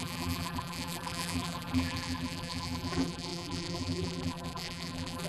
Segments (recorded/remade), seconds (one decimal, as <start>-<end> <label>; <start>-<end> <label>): 0.0-5.3 remade